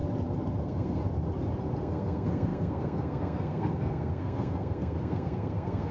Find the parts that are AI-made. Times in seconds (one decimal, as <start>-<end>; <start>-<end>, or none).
0.6-1.0; 1.8-5.9